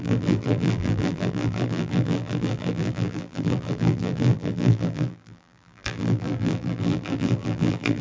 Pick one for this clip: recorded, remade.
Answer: remade